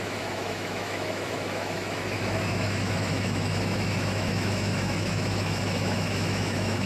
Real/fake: fake